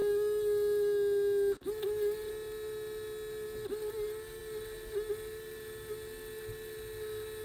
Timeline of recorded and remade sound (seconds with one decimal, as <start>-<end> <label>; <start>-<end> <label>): 0.0-7.4 recorded